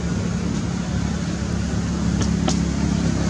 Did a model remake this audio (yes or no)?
no